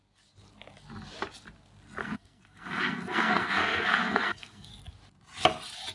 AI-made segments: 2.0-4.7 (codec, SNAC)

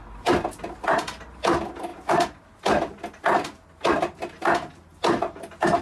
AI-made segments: none

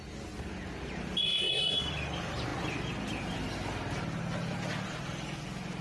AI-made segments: 1.2-1.9 (codec, SNAC)

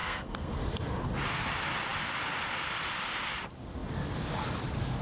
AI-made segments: 0.0-0.6 (codec, SNAC)

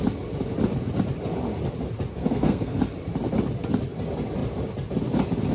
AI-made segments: 2.2-2.8 (codec, SNAC)